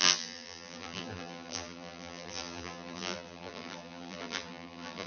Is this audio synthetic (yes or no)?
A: yes